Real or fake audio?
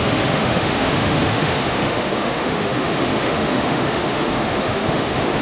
fake